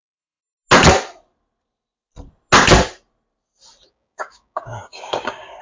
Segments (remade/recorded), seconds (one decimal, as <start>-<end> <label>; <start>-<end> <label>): 0.0-0.4 remade; 0.4-3.8 recorded; 3.8-5.6 remade